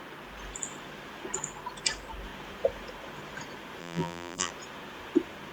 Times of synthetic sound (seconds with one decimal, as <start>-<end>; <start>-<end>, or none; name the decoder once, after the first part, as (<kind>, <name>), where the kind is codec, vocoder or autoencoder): 3.8-4.5 (vocoder, BigVGAN v2)